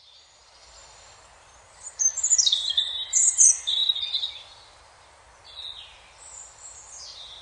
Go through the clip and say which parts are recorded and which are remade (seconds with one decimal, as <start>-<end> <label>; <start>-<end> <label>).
0.0-3.8 remade; 3.8-4.4 recorded; 4.4-7.4 remade